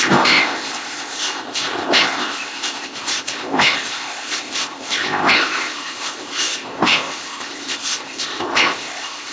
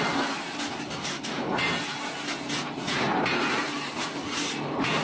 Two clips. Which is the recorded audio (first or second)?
second